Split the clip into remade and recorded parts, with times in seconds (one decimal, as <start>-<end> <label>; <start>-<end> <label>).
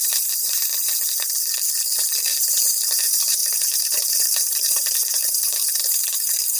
0.0-0.7 remade; 0.7-2.2 recorded; 2.2-6.6 remade